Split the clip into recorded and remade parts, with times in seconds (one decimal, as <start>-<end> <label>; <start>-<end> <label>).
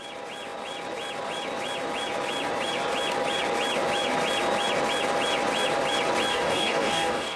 0.0-6.3 recorded; 6.3-7.4 remade